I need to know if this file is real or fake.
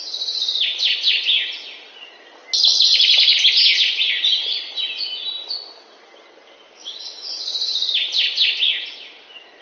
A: real